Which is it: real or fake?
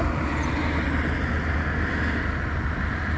real